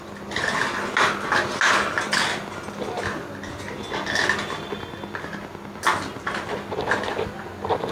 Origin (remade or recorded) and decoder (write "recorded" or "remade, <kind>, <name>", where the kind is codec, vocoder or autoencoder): recorded